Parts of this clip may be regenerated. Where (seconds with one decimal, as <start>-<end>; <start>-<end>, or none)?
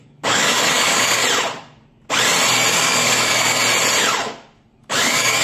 0.0-1.2; 2.7-3.6; 4.8-5.4